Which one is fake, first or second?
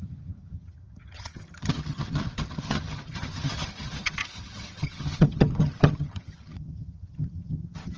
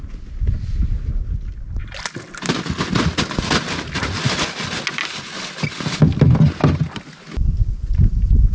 first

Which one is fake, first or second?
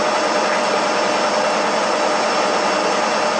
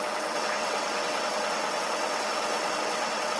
second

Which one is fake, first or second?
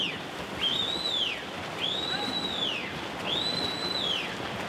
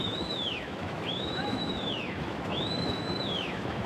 second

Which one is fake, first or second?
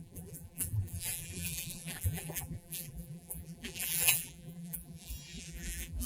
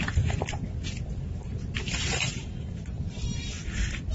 first